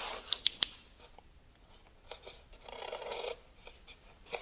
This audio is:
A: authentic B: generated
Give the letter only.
A